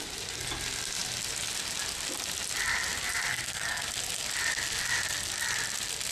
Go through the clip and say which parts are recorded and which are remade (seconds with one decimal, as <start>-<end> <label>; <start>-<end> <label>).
0.0-3.3 recorded; 3.3-3.8 remade; 3.8-6.1 recorded